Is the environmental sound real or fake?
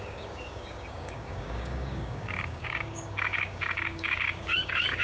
fake